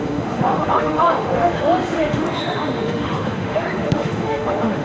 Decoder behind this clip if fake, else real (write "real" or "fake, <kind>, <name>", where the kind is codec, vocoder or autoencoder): fake, autoencoder, DAC-VAE